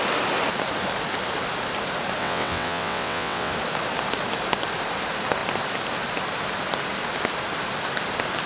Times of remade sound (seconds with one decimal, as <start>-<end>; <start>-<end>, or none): 2.2-3.5